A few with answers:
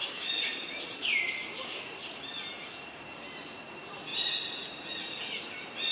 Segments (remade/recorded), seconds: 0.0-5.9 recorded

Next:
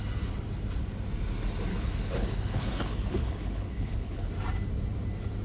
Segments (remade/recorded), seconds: 0.0-1.7 recorded; 1.7-4.3 remade; 4.3-5.4 recorded

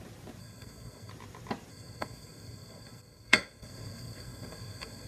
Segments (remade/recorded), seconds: 0.0-0.4 recorded; 0.4-1.1 remade; 1.1-1.7 recorded; 1.7-5.1 remade

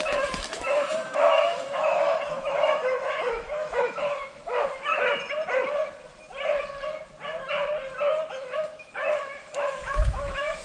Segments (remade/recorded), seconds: 0.0-4.9 remade; 4.9-8.3 recorded; 8.3-10.6 remade

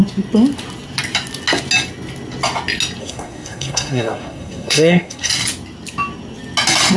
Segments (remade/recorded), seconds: 0.0-3.0 recorded; 3.0-5.3 remade; 5.3-7.0 recorded

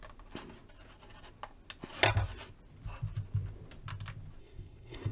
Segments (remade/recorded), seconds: 0.0-4.4 recorded; 4.4-5.1 remade

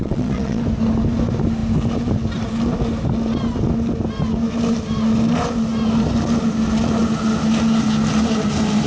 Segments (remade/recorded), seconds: 0.0-0.6 remade; 0.6-8.9 recorded